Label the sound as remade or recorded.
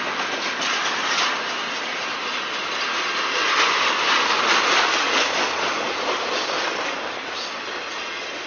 recorded